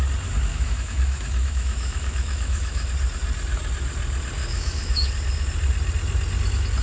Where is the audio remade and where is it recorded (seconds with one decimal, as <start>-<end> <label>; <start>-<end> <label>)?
0.0-0.5 recorded; 0.5-2.9 remade; 2.9-4.4 recorded; 4.4-5.1 remade; 5.1-6.8 recorded